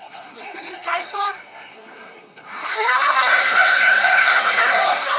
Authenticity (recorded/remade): remade